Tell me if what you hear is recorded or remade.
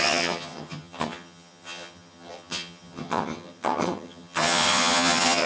remade